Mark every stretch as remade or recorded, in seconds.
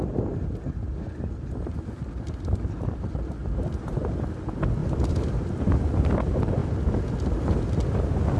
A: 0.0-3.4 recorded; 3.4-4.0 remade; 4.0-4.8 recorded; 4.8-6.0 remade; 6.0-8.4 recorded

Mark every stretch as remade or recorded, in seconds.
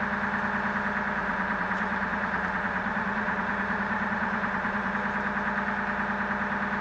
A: 0.0-1.2 recorded; 1.2-4.9 remade; 4.9-6.8 recorded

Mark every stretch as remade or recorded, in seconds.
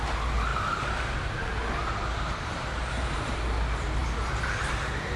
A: 0.0-2.1 recorded; 2.1-3.3 remade; 3.3-4.0 recorded; 4.0-5.2 remade